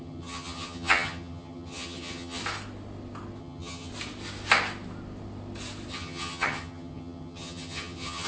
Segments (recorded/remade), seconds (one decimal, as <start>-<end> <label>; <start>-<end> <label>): 0.0-2.4 remade; 2.4-3.4 recorded; 3.4-3.9 remade; 3.9-5.9 recorded; 5.9-8.3 remade